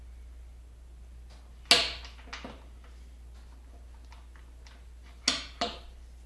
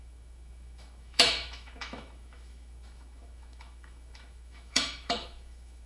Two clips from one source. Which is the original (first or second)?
first